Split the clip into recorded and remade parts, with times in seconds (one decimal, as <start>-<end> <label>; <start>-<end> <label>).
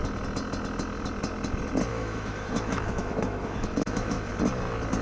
0.0-1.9 recorded; 1.9-4.3 remade; 4.3-5.0 recorded